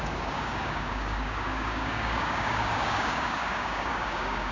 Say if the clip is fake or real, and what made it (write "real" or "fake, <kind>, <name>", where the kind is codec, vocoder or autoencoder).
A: fake, codec, DAC